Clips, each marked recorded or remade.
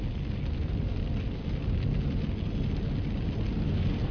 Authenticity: recorded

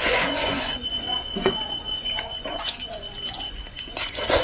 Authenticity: remade